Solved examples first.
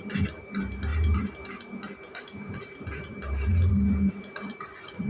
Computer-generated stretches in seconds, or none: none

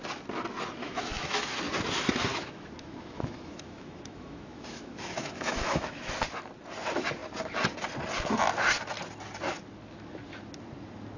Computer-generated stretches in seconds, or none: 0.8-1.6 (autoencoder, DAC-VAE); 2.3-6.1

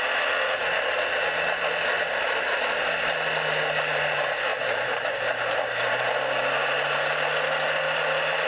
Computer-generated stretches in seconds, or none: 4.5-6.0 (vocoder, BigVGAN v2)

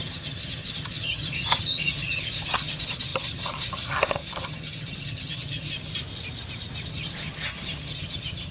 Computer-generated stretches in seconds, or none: 0.0-5.9 (vocoder, HiFi-GAN); 6.9-8.5

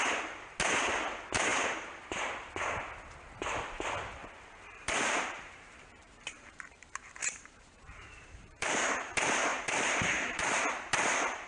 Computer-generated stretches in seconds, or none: 1.5-2.3 (vocoder, BigVGAN v2); 4.2-8.9; 9.5-10.6